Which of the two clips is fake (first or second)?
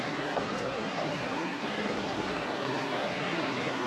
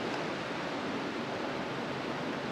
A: first